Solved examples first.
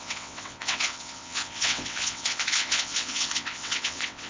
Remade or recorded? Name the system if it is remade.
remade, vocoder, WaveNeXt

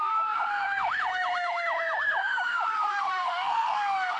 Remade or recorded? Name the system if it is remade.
remade, autoencoder, DAC-VAE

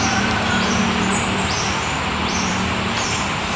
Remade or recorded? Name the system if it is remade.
remade, vocoder, BigVGAN v2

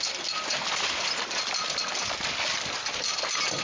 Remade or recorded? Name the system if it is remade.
recorded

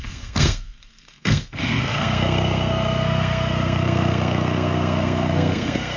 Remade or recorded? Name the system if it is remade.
remade, codec, SNAC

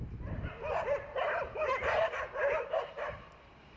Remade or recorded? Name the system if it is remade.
remade, vocoder, BigVGAN v2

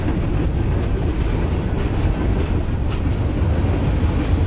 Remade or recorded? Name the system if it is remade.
recorded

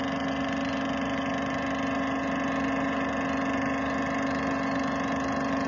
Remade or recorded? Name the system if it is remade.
recorded